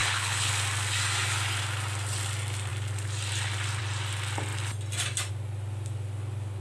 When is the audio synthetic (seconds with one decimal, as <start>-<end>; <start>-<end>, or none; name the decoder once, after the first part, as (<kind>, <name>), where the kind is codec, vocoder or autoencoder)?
0.0-0.5 (codec, HILCodec)